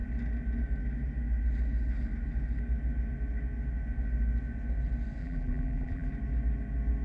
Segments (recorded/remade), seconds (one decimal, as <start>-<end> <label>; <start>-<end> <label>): 0.0-5.2 recorded; 5.2-6.1 remade; 6.1-7.0 recorded